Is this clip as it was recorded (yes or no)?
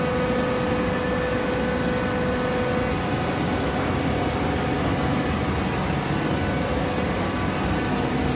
yes